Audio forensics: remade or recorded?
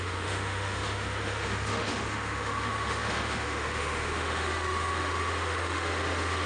remade